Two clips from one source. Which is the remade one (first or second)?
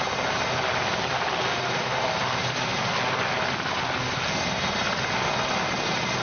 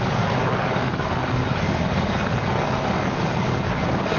second